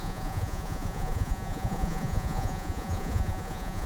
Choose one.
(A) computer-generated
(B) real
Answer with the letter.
A